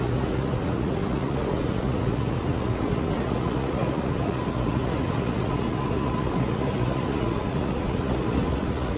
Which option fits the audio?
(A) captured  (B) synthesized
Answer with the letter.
B